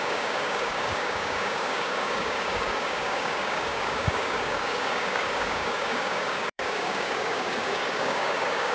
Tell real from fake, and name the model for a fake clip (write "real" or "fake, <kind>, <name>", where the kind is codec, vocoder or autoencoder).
fake, codec, DAC